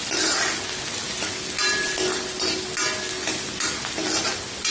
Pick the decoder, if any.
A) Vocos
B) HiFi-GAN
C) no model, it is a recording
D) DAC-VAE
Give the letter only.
C